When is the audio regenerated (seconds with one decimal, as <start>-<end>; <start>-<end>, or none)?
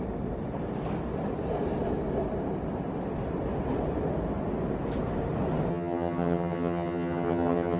5.7-7.8